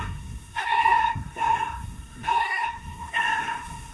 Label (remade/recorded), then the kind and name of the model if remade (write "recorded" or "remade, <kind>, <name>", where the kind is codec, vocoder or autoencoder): remade, codec, SNAC